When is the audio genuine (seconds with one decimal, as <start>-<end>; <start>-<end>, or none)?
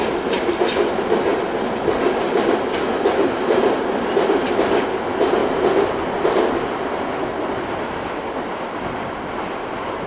0.0-10.1